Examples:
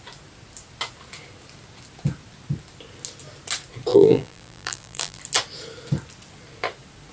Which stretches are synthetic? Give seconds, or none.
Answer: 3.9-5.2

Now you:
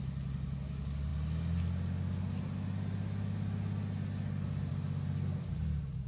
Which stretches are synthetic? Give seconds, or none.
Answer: none

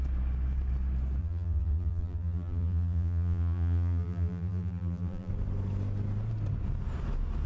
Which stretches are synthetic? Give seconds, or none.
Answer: 1.2-5.3